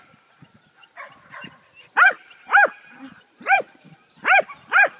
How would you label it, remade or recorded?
recorded